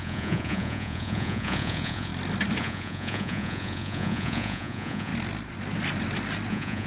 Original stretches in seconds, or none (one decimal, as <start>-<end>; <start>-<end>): 2.1-2.6; 5.1-6.5